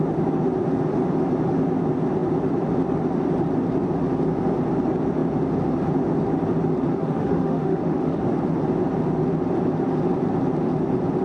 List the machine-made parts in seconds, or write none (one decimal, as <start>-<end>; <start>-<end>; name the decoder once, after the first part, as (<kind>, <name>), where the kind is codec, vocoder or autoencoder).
6.9-8.2 (autoencoder, DAC-VAE)

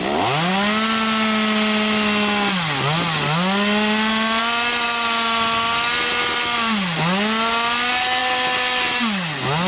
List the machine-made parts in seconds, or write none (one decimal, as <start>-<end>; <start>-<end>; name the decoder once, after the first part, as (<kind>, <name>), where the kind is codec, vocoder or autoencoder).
none

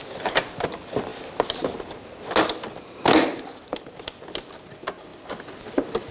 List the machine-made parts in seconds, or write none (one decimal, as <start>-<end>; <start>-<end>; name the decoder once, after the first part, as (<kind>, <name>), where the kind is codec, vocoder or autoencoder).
none

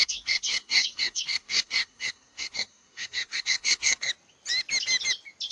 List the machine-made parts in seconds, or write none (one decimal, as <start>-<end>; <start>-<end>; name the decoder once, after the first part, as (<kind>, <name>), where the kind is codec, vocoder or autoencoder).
0.0-4.1 (codec, SNAC)

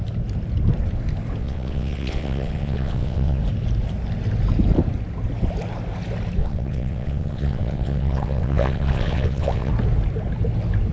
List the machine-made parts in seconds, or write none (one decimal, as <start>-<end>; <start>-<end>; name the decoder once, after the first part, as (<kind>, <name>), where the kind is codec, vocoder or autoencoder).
1.4-3.4 (vocoder, WaveNeXt); 6.4-9.7

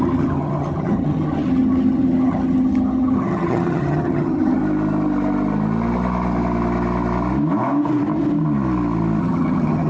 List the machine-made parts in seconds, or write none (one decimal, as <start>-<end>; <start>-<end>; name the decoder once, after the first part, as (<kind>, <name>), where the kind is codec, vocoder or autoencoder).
0.0-4.6 (vocoder, HiFi-GAN); 9.2-9.9

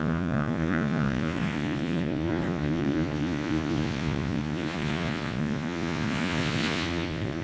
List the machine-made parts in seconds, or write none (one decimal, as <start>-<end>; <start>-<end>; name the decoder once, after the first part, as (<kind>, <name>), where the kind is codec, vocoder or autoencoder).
0.0-7.4 (vocoder, Vocos)

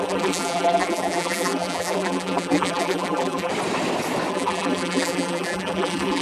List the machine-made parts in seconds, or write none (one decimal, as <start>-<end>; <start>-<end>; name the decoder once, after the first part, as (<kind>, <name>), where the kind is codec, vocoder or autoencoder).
0.0-3.5 (vocoder, BigVGAN v2); 4.3-6.2